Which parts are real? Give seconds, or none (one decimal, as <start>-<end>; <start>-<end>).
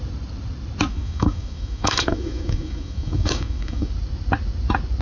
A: 0.0-0.9; 3.9-5.0